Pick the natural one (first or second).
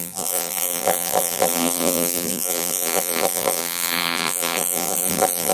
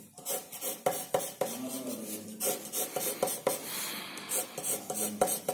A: second